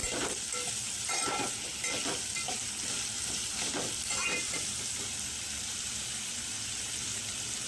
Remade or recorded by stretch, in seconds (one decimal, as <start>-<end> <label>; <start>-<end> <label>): 0.0-7.7 recorded